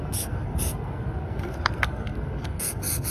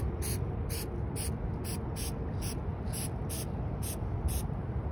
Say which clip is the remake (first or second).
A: first